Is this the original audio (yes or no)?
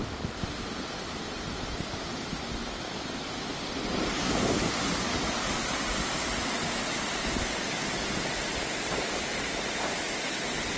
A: yes